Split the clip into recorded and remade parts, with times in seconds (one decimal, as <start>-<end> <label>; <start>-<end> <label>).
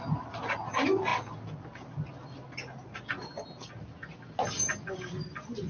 0.0-5.7 recorded